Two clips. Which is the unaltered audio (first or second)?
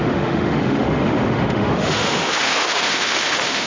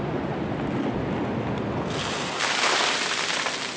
second